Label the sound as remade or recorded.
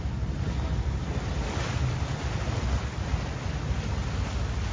recorded